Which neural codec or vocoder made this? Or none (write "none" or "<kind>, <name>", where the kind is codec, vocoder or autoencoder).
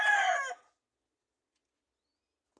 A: none